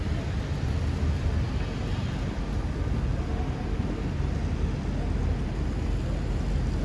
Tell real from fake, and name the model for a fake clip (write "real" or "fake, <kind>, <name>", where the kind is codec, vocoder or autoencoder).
real